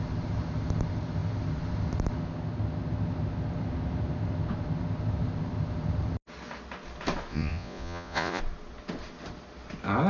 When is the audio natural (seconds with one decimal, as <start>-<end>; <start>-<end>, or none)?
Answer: 0.0-7.3; 8.4-10.1